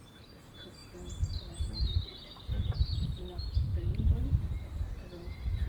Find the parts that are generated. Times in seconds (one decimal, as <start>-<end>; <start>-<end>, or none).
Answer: 0.0-0.8; 1.6-5.7